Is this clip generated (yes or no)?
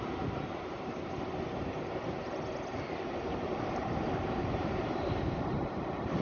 yes